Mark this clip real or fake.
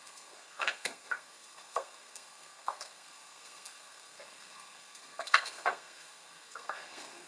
fake